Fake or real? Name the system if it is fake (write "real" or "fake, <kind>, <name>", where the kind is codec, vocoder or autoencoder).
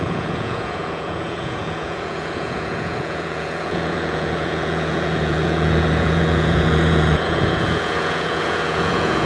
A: fake, vocoder, Vocos